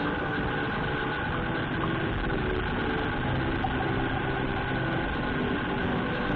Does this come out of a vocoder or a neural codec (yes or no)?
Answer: no